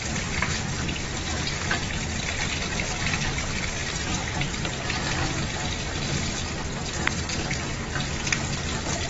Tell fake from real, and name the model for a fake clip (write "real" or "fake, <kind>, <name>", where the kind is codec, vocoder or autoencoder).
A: real